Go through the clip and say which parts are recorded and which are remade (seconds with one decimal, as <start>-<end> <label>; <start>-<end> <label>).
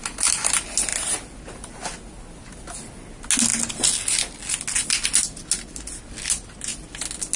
0.0-7.4 recorded